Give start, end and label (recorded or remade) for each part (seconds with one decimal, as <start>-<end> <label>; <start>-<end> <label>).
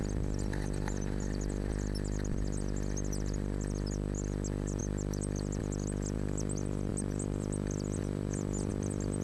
0.0-9.2 recorded